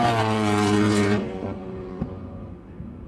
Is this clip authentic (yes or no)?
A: no